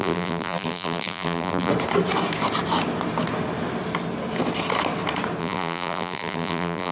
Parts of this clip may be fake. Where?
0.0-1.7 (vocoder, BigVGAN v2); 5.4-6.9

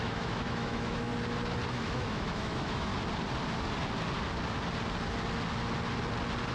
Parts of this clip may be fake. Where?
0.0-1.1 (autoencoder, DAC-VAE); 1.7-2.9

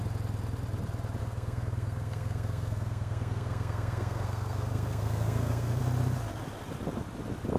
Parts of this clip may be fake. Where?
1.2-5.8 (codec, SNAC)